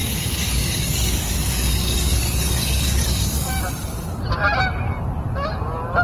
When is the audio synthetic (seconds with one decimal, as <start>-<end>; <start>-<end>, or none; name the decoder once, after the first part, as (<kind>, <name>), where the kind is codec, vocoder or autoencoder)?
0.0-3.6 (codec, DAC)